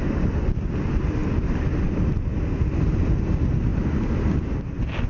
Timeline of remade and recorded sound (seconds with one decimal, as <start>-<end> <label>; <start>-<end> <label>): 0.0-1.2 recorded; 1.2-2.1 remade; 2.1-5.1 recorded